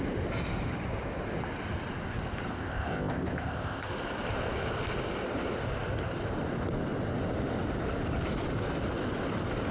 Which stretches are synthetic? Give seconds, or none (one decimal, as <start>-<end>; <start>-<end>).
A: 2.5-3.9